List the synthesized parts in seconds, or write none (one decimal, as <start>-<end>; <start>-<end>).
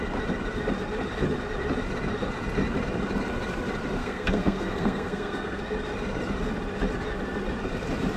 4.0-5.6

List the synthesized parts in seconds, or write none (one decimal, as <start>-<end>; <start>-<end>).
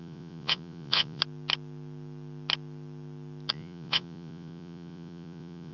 0.0-1.2; 3.5-5.7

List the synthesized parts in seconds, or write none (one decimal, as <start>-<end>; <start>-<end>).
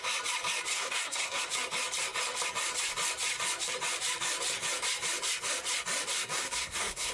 0.7-1.4; 6.1-7.1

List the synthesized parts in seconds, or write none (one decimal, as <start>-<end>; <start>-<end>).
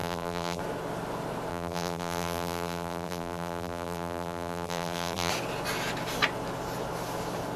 0.0-0.6; 1.5-5.3